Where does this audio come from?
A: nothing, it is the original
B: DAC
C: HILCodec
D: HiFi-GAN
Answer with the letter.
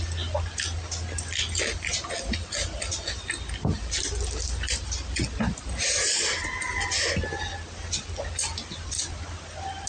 A